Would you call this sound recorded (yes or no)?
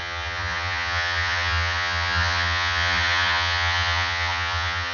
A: no